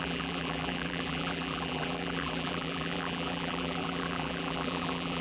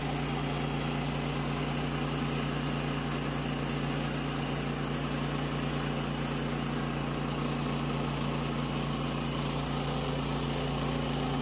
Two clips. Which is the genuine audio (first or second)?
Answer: second